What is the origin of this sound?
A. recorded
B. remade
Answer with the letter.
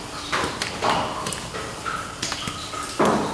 A